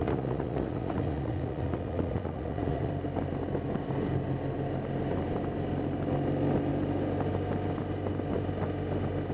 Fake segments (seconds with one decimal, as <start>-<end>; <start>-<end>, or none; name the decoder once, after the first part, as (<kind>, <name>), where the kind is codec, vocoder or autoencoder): 0.0-2.9 (vocoder, Vocos)